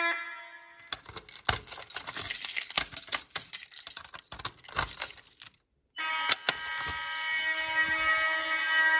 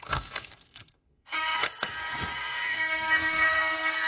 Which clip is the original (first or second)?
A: first